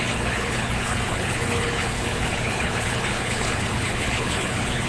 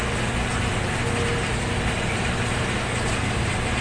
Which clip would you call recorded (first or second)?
second